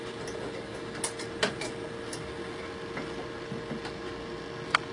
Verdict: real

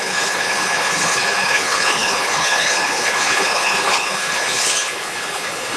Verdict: fake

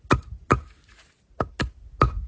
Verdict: real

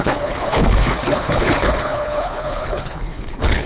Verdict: fake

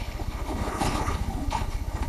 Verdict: fake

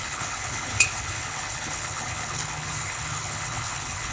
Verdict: fake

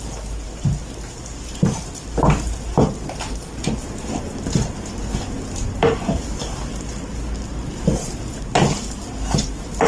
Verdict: real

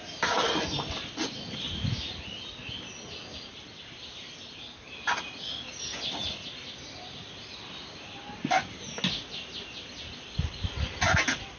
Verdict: real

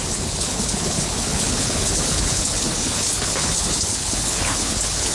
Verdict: fake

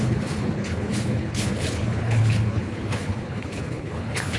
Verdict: fake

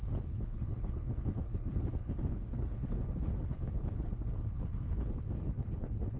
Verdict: fake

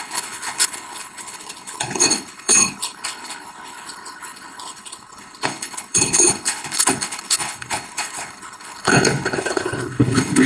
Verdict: fake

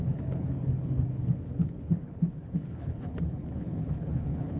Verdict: fake